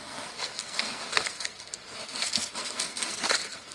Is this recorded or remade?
remade